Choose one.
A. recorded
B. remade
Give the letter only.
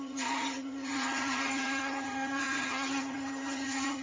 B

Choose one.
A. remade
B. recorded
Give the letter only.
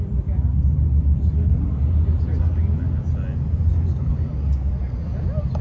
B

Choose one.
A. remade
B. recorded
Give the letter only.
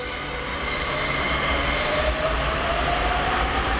B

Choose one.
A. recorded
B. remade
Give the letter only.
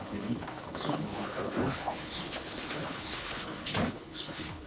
B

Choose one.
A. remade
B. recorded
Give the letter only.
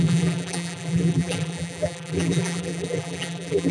A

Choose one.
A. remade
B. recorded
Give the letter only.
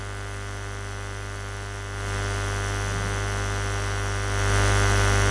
B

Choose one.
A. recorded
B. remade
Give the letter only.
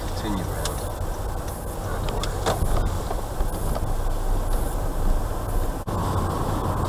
A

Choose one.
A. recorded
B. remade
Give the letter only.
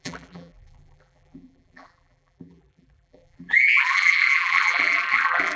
B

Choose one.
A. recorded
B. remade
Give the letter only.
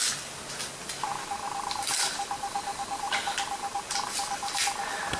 A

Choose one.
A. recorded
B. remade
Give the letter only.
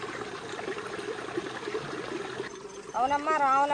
A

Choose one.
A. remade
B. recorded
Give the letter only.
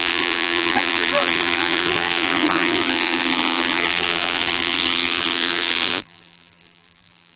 A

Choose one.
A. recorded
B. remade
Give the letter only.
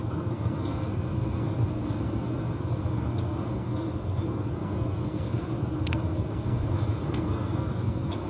B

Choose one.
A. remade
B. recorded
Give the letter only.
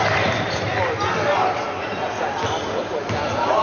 B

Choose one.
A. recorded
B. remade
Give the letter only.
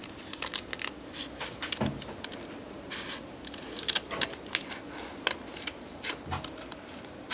A